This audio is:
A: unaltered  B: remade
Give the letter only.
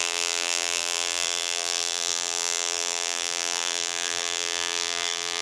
B